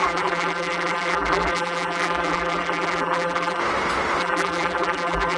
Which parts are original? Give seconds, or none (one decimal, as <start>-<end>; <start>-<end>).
3.6-4.2